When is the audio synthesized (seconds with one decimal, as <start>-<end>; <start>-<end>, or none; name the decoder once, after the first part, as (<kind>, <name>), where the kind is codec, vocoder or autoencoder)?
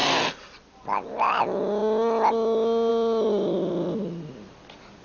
2.9-3.7 (vocoder, BigVGAN v2)